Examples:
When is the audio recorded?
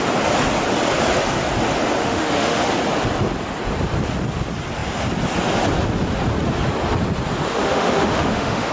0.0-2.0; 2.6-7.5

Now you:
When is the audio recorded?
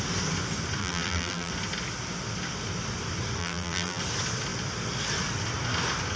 0.0-0.8; 1.5-3.4; 4.0-6.2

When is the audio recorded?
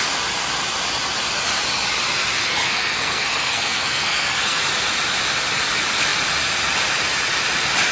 0.0-2.4; 4.6-7.9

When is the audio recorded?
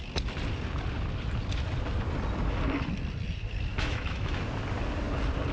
0.0-3.7; 4.4-5.5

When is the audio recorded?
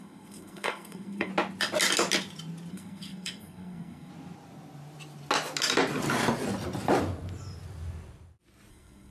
1.3-2.7; 4.1-8.7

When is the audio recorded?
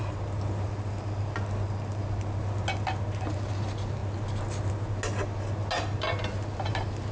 0.0-7.1